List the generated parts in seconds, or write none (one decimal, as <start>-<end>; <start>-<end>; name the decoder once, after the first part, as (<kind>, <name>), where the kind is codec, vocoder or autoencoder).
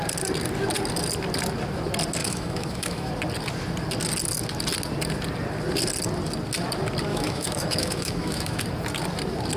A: 2.2-3.1 (autoencoder, DAC-VAE); 7.1-8.6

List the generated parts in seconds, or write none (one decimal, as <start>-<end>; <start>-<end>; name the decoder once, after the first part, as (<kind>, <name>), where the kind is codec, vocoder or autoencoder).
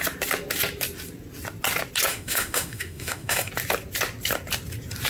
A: 2.1-3.5 (autoencoder, DAC-VAE)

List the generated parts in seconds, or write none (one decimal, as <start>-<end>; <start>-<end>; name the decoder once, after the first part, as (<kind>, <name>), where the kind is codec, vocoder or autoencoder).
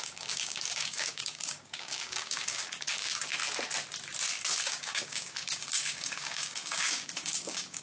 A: 0.0-3.4 (codec, DAC); 4.6-7.8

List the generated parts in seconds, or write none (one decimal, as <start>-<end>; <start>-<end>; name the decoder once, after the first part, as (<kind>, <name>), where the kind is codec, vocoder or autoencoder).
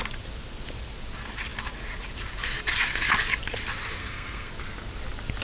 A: 4.0-4.5 (codec, SNAC)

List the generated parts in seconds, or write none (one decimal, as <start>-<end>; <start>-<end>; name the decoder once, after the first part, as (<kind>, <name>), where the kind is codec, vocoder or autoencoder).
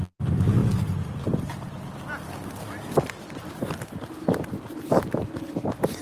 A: none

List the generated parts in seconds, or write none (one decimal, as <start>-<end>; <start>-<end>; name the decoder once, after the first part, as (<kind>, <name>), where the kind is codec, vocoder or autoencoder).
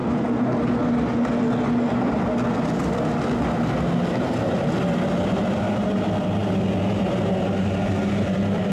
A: 4.8-6.4 (vocoder, BigVGAN v2)